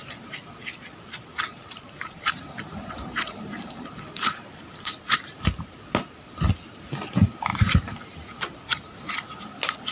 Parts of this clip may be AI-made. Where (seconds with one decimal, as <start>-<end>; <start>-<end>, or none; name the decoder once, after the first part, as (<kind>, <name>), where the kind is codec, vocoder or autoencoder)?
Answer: 1.5-4.5 (vocoder, BigVGAN v2); 7.5-8.0